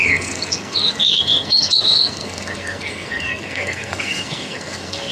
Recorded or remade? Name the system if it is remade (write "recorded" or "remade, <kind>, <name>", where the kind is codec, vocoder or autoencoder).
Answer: remade, codec, SNAC